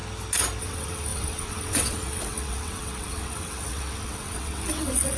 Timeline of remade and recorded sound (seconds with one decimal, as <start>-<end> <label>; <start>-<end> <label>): 0.0-0.6 recorded; 0.6-5.2 remade